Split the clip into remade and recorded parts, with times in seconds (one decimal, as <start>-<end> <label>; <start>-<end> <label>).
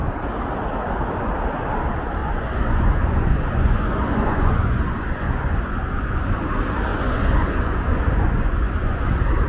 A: 0.0-2.2 recorded; 2.2-6.5 remade; 6.5-6.9 recorded; 6.9-9.0 remade; 9.0-9.5 recorded